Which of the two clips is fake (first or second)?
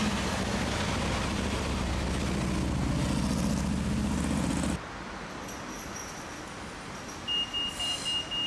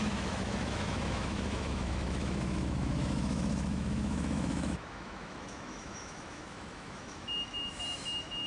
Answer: second